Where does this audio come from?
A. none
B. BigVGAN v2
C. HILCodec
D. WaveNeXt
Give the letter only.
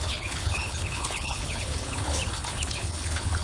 C